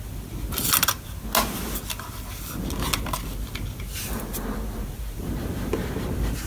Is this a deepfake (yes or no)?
no